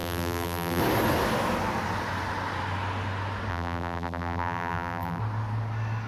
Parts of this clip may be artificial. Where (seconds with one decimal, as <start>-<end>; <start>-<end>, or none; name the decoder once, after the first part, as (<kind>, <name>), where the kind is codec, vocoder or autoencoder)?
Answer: 0.0-0.8 (vocoder, BigVGAN v2); 3.5-5.2